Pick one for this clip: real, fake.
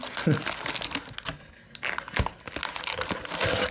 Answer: real